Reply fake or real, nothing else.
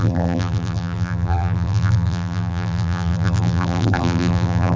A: fake